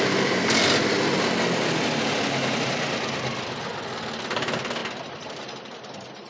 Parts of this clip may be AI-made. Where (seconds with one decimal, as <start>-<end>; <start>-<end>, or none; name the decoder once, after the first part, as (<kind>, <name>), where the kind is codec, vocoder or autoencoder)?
none